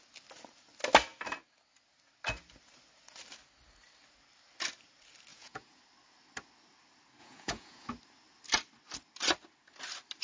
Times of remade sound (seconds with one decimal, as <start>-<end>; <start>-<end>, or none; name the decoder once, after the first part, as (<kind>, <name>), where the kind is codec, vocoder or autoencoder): 5.3-5.8 (vocoder, Vocos); 7.2-7.9